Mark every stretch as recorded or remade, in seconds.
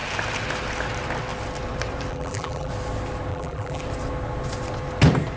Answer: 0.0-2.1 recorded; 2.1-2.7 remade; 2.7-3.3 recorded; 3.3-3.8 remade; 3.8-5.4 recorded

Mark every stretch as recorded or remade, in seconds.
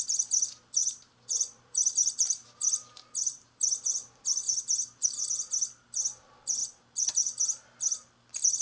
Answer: 0.0-0.8 recorded; 0.8-4.6 remade; 4.6-8.6 recorded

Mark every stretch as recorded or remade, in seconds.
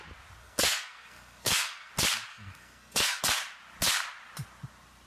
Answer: 0.0-0.4 recorded; 0.4-1.9 remade; 1.9-2.3 recorded; 2.3-3.2 remade; 3.2-5.1 recorded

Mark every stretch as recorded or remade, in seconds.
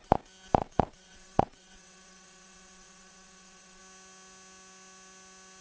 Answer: 0.0-0.6 recorded; 0.6-3.8 remade; 3.8-5.6 recorded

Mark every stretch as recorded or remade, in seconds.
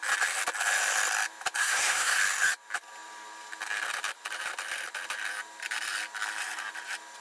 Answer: 0.0-1.6 recorded; 1.6-2.2 remade; 2.2-7.2 recorded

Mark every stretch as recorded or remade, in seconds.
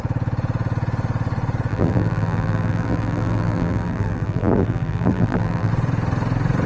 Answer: 0.0-1.7 recorded; 1.7-5.7 remade; 5.7-6.7 recorded